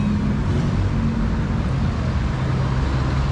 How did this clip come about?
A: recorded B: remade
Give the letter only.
A